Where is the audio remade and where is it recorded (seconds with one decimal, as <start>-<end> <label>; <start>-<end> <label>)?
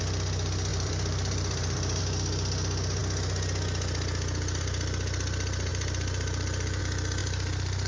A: 0.0-0.7 recorded; 0.7-2.0 remade; 2.0-5.7 recorded; 5.7-6.8 remade; 6.8-7.2 recorded; 7.2-7.9 remade